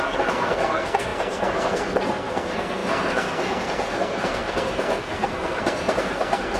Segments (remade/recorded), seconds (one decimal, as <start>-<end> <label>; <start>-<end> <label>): 0.0-6.6 remade